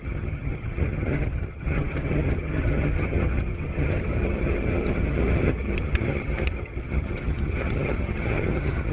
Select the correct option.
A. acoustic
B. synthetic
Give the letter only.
B